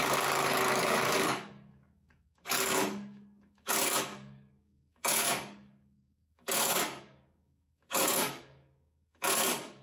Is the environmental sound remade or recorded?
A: remade